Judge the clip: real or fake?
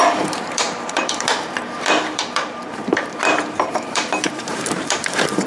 fake